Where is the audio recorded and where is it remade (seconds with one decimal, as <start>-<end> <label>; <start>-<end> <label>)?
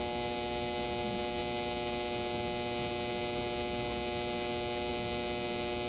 0.0-5.9 recorded